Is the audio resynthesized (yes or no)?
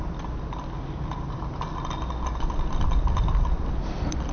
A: no